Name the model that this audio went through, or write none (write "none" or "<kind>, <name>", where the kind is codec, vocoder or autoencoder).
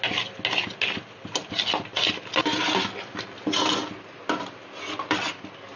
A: none